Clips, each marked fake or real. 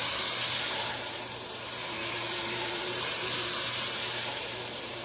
fake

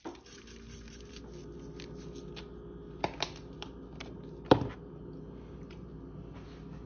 real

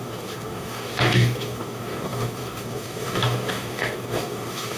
fake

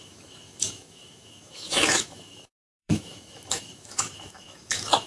fake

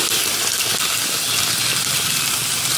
real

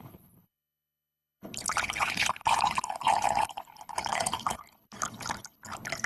fake